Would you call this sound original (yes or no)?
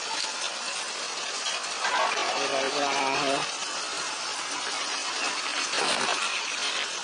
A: yes